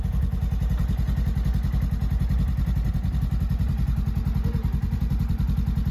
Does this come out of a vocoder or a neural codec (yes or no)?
no